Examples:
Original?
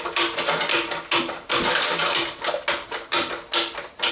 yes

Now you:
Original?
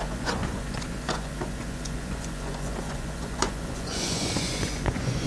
no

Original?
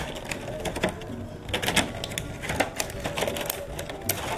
yes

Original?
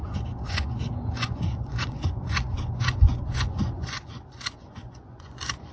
no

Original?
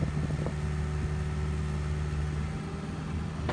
yes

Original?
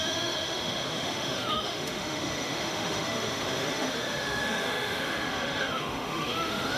no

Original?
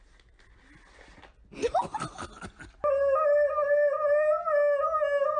yes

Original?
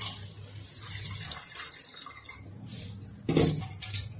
yes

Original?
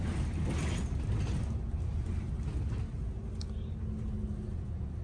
yes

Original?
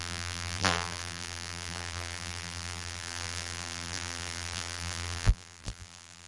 no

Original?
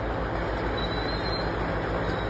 yes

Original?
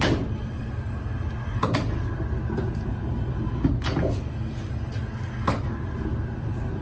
yes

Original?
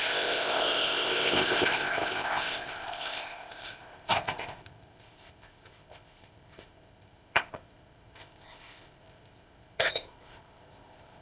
no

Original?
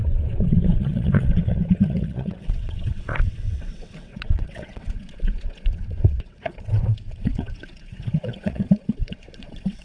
no